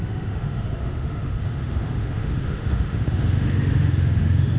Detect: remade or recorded remade